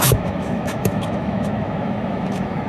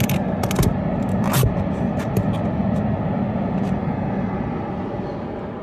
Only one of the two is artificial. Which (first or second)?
first